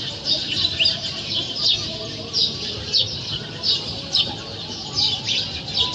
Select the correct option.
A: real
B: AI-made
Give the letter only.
A